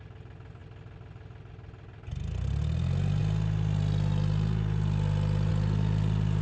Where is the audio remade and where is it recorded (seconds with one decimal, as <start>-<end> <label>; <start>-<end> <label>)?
0.0-6.4 recorded